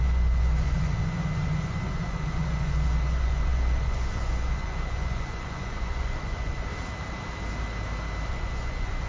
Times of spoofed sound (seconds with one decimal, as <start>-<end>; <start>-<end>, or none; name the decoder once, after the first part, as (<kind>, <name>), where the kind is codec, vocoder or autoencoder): 0.0-6.7 (vocoder, Vocos); 8.3-9.1